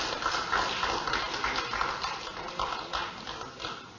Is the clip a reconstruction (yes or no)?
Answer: no